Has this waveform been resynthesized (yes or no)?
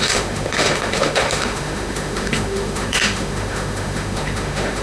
yes